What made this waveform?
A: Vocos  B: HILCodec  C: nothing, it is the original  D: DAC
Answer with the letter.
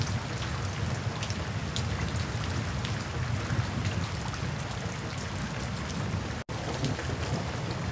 C